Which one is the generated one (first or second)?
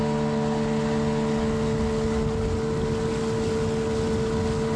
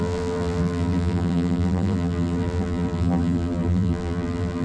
second